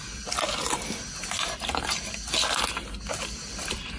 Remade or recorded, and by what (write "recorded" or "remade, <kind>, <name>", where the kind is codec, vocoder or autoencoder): recorded